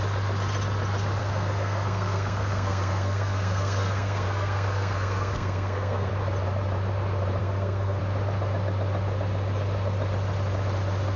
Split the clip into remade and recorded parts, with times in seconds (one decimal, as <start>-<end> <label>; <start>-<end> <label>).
0.0-1.2 recorded; 1.2-6.1 remade; 6.1-7.4 recorded; 7.4-8.0 remade; 8.0-11.2 recorded